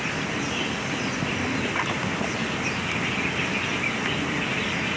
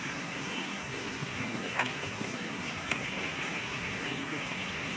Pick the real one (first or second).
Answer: first